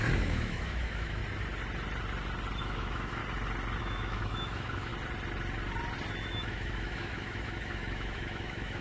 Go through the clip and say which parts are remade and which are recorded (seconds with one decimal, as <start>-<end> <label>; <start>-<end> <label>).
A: 0.0-1.2 remade; 1.2-2.6 recorded; 2.6-3.2 remade; 3.2-3.8 recorded; 3.8-4.9 remade; 4.9-6.2 recorded; 6.2-8.8 remade